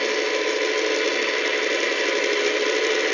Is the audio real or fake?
real